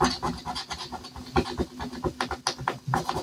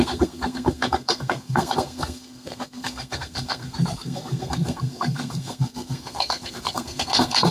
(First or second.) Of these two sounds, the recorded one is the first